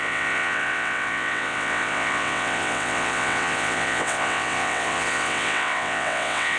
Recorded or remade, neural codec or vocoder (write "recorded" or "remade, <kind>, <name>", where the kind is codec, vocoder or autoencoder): remade, vocoder, WaveNeXt